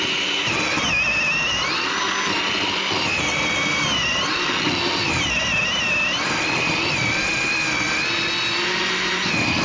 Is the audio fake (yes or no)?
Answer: no